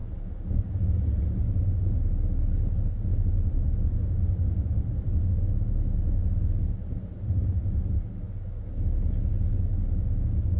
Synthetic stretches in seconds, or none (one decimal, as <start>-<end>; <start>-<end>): 3.1-5.2